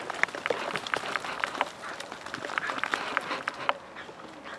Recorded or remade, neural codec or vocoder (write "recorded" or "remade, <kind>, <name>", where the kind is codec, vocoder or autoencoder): recorded